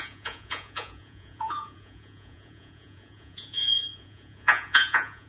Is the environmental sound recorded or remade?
remade